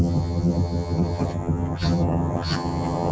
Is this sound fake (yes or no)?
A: yes